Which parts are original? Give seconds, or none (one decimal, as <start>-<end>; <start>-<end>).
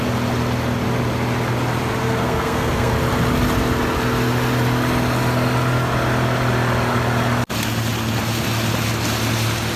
0.0-2.0; 2.9-9.8